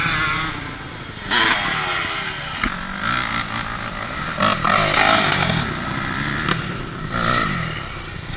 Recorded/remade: recorded